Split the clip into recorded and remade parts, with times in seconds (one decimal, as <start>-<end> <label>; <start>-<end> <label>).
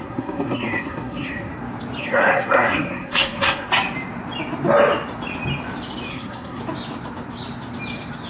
0.0-1.5 remade; 1.5-2.0 recorded; 2.0-3.7 remade; 3.7-6.1 recorded; 6.1-6.6 remade; 6.6-8.3 recorded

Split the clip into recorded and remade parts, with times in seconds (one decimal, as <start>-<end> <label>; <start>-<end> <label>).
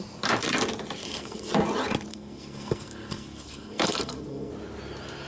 0.0-1.0 recorded; 1.0-1.5 remade; 1.5-2.1 recorded; 2.1-4.5 remade; 4.5-5.3 recorded